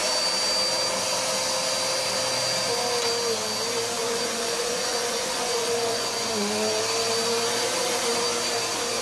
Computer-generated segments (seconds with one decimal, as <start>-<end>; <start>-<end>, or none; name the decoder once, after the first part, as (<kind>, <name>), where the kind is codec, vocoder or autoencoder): 4.0-6.3 (vocoder, Vocos)